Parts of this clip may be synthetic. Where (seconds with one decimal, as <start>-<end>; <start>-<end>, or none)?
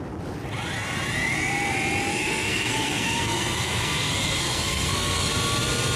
2.1-5.3